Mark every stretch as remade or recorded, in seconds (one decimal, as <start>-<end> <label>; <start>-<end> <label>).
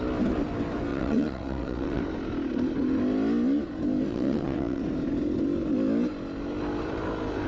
0.0-0.9 recorded; 0.9-2.0 remade; 2.0-4.1 recorded; 4.1-4.8 remade; 4.8-7.5 recorded